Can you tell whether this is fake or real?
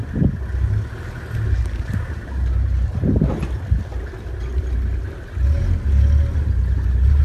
real